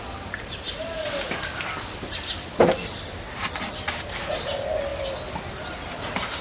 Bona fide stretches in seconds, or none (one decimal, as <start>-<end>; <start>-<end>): 0.0-6.4